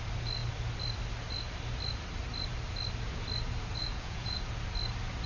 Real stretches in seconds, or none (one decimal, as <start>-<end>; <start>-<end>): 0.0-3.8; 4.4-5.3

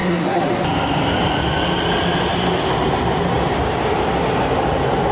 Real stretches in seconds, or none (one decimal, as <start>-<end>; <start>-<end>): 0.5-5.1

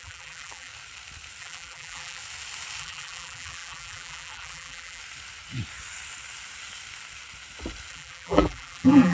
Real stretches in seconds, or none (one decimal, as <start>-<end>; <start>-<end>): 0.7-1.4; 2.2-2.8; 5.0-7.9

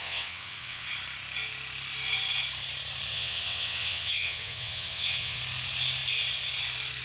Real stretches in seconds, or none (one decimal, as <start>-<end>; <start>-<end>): 0.9-3.1; 5.4-7.0